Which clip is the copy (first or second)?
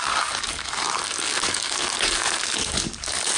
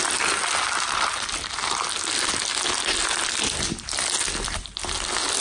first